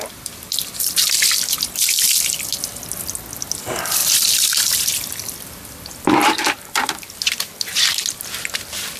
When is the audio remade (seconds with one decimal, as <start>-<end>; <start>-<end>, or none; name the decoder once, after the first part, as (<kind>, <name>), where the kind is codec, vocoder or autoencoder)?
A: 0.0-2.5 (vocoder, BigVGAN v2); 3.6-9.0